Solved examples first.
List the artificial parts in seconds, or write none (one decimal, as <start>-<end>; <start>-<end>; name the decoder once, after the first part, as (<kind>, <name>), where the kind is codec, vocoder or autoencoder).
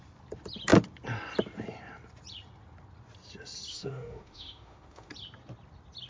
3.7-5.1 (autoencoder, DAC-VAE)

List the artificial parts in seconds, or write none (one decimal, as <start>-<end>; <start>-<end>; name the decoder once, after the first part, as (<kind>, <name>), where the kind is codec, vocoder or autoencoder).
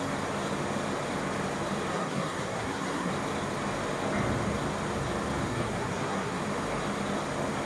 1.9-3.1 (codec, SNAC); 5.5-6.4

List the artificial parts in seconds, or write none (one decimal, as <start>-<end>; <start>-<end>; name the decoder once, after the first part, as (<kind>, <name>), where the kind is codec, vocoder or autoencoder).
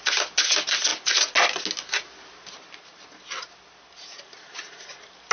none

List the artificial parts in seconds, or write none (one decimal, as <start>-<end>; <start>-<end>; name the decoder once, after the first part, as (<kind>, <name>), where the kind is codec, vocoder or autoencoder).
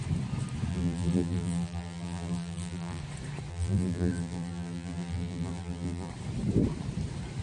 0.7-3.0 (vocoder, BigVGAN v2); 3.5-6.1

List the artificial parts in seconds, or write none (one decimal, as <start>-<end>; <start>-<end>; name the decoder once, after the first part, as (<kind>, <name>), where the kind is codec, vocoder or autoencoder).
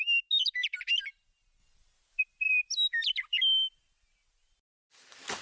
none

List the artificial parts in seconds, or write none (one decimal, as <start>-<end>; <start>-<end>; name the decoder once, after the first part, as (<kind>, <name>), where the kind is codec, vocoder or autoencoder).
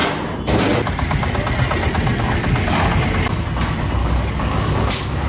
2.1-3.0 (codec, DAC); 4.0-5.3